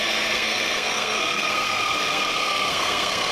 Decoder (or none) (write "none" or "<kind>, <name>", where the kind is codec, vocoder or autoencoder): codec, SNAC